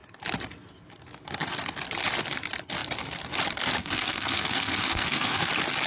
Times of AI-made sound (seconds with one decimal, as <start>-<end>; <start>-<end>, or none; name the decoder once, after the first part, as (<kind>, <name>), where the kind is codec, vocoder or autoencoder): 3.8-5.4 (codec, SNAC)